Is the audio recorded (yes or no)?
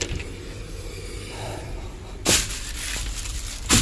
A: no